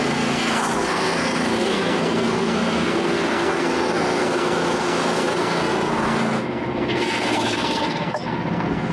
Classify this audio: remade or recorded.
remade